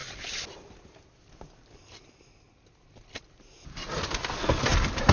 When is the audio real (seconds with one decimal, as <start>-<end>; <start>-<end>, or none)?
0.0-5.1